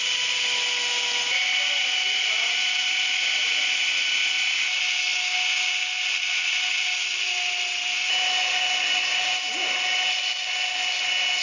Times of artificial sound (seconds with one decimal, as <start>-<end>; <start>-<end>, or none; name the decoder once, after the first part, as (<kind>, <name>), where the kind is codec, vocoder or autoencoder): 2.2-3.6 (vocoder, BigVGAN v2)